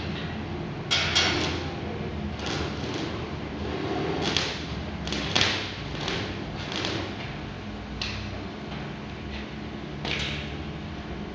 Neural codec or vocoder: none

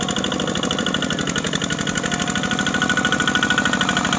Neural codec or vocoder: none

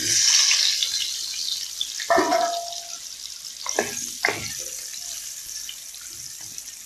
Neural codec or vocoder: none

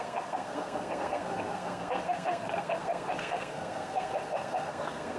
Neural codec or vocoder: codec, SNAC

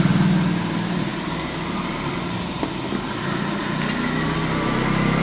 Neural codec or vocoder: none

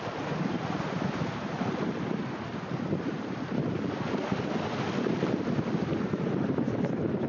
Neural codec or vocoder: none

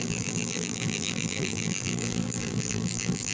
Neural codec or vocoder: vocoder, BigVGAN v2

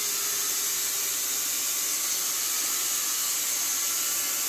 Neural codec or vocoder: none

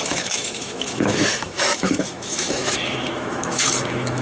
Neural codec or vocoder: autoencoder, DAC-VAE